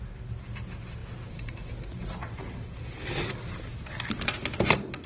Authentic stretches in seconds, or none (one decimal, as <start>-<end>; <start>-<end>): 0.0-1.0; 1.7-2.2; 2.8-3.7